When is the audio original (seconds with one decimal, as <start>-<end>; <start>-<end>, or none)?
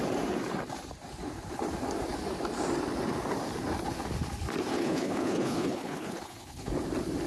0.0-4.7; 6.7-7.3